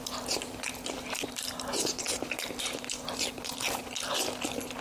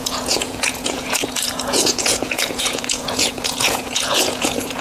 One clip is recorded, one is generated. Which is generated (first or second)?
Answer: second